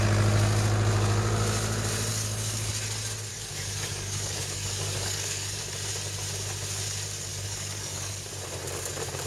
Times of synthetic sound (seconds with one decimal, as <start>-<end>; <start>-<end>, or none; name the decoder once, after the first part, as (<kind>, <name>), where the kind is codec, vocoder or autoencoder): 2.1-2.7 (codec, DAC); 3.3-5.6; 7.3-8.3